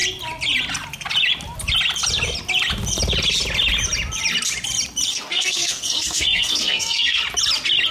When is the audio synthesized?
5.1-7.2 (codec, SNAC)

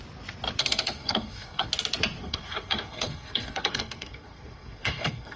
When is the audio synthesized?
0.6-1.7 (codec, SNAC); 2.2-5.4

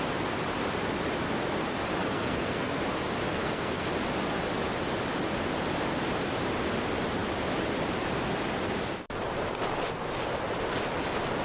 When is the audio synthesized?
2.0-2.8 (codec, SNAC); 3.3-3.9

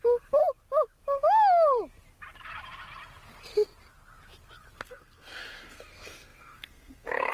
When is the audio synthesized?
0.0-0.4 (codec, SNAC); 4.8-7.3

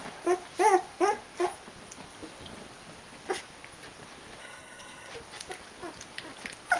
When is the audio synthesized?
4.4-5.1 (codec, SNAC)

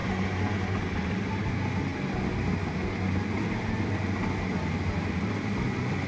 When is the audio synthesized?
none

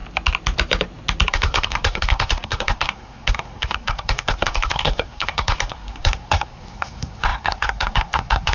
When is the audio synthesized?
1.3-8.5 (codec, SNAC)

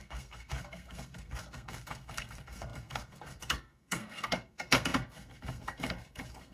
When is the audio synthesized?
0.0-6.5 (codec, SNAC)